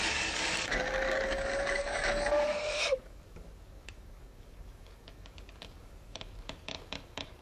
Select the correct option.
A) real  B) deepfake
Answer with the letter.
B